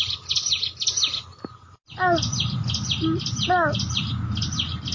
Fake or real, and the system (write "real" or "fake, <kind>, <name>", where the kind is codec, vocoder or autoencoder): real